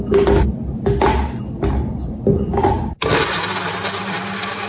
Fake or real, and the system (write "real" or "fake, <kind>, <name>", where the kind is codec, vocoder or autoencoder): real